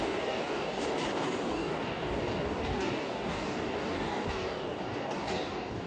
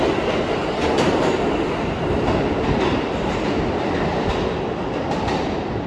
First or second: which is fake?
first